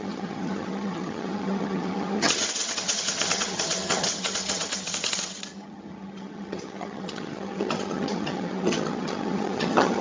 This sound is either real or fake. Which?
fake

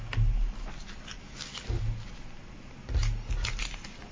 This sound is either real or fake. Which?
real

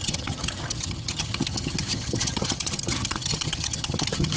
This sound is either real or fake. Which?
fake